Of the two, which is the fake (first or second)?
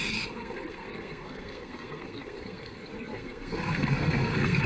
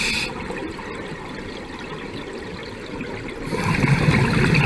first